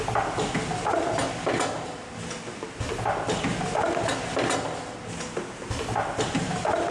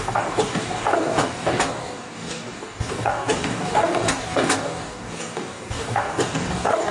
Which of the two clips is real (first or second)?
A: first